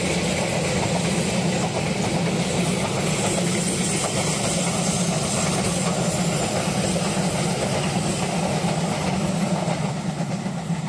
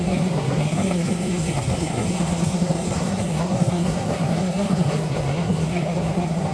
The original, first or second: first